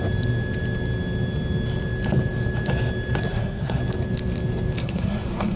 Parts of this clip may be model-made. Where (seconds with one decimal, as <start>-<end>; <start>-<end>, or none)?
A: 3.3-3.8; 4.8-5.6